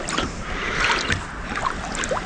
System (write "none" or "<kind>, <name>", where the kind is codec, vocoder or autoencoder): none